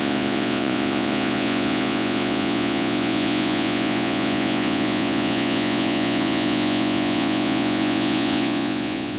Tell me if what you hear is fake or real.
fake